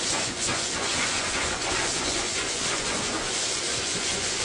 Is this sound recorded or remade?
remade